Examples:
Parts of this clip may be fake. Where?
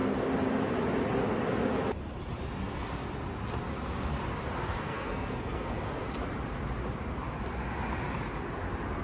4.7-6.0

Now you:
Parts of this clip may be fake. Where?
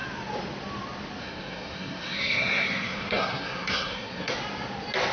1.2-4.3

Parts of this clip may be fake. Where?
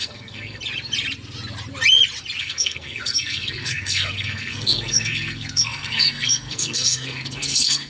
0.0-0.6; 2.4-7.9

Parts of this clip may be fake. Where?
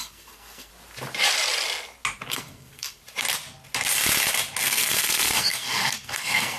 0.0-0.7; 2.3-3.0; 4.6-6.6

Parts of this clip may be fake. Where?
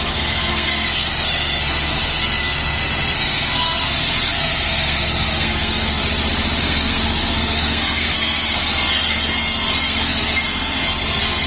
0.0-6.0; 6.6-11.5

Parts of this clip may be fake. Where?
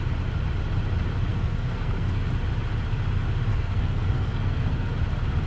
1.3-2.2; 3.5-4.9